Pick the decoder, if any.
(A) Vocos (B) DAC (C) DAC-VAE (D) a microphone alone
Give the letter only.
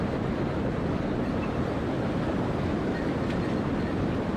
D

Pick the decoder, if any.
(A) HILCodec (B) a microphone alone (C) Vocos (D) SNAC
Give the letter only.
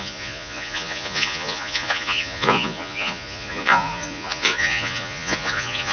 C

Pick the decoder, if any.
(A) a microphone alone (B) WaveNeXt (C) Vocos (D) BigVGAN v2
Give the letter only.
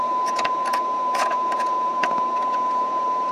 C